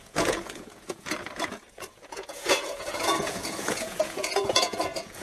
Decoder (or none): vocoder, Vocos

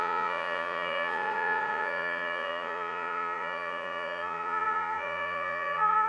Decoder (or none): vocoder, Vocos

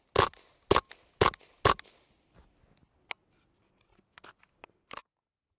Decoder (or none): none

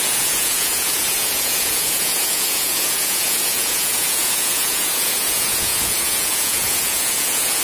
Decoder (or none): vocoder, Vocos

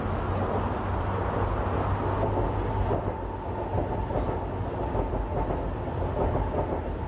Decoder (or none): none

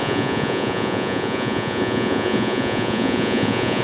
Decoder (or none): vocoder, Vocos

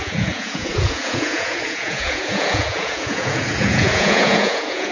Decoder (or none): vocoder, Vocos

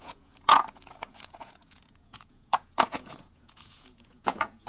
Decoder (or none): vocoder, Vocos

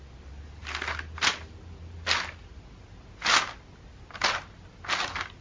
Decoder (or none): none